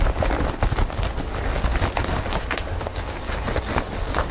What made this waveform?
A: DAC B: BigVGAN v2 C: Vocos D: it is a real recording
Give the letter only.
D